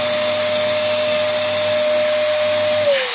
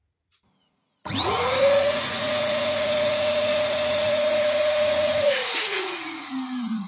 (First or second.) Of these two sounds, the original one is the first